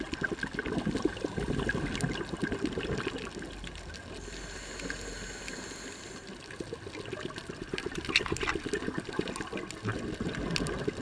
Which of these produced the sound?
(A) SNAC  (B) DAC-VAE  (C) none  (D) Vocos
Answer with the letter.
C